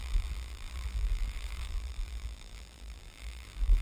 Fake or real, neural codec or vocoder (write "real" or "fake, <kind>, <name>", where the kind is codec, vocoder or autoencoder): fake, vocoder, BigVGAN v2